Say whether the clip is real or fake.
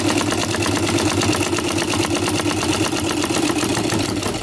real